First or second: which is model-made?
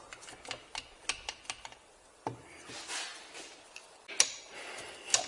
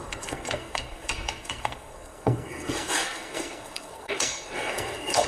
second